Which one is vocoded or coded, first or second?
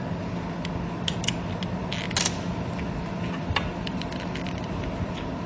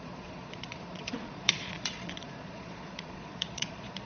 second